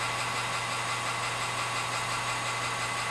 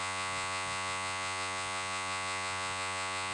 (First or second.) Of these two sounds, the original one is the first